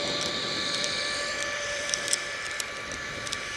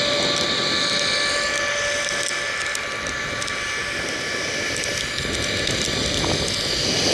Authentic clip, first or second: second